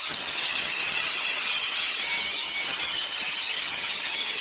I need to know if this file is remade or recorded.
remade